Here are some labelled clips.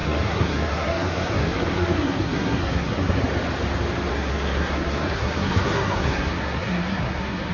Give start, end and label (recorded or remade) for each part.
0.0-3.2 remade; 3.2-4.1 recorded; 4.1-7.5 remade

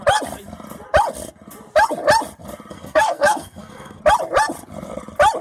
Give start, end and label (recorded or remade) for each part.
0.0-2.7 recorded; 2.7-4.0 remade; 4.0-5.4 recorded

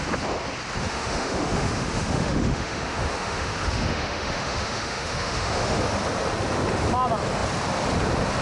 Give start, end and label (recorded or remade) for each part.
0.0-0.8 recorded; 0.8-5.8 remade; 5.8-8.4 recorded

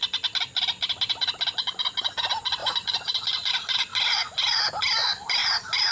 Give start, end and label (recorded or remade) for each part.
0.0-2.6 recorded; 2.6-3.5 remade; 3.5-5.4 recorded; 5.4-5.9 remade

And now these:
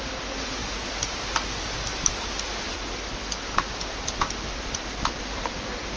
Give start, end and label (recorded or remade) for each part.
0.0-6.0 recorded